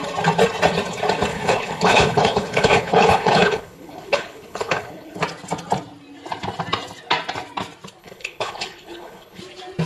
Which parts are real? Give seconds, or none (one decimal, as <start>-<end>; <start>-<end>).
0.0-1.3; 5.2-8.0; 9.4-9.9